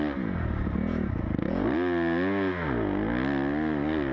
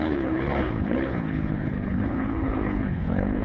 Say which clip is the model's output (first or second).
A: second